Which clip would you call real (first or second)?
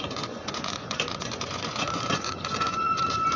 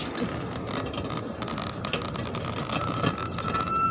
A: second